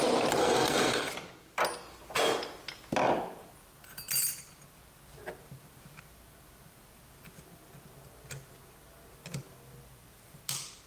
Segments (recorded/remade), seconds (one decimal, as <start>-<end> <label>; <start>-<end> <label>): 0.0-0.4 recorded; 0.4-1.1 remade; 1.1-10.9 recorded